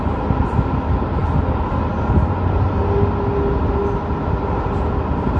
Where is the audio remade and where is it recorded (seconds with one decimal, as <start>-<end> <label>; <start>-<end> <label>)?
0.0-5.4 recorded